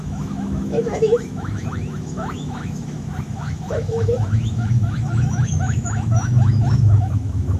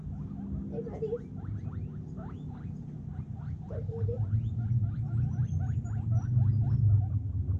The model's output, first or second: first